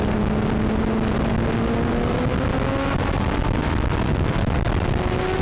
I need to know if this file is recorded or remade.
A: recorded